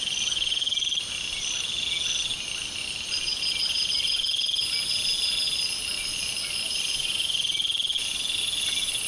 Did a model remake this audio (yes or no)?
no